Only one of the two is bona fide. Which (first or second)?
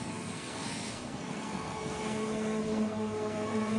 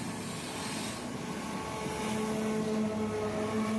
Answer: second